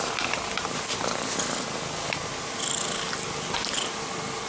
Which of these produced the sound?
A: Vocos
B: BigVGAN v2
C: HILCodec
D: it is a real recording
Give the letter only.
D